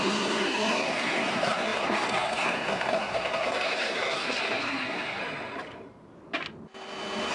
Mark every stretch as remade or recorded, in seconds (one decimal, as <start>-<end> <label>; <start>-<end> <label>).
0.0-5.2 remade; 5.2-7.3 recorded